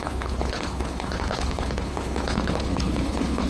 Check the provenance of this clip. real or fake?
fake